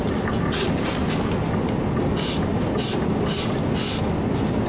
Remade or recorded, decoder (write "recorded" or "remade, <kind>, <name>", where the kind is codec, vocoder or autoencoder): recorded